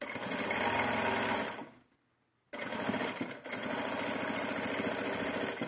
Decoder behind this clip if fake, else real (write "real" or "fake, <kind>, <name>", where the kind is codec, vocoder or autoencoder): real